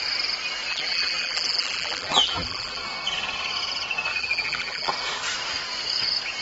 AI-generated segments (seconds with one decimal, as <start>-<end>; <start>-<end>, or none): 0.7-2.8; 4.1-4.9

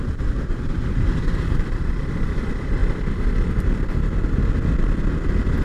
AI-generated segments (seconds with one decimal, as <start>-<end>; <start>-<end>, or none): 0.0-2.8